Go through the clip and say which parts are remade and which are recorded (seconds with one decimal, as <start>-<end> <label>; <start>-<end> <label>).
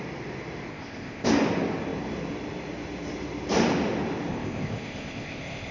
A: 0.0-0.7 recorded; 0.7-1.3 remade; 1.3-4.3 recorded; 4.3-5.7 remade